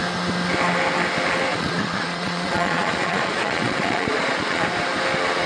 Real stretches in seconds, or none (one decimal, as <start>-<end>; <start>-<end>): 0.0-1.5; 4.6-5.5